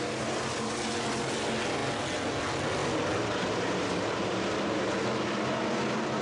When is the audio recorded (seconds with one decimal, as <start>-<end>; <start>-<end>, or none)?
0.0-2.8; 4.8-6.2